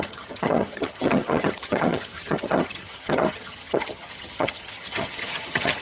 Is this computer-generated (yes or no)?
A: yes